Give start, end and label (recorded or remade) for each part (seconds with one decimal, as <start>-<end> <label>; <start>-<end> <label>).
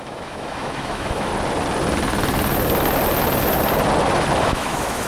0.0-1.3 remade; 1.3-4.4 recorded; 4.4-5.1 remade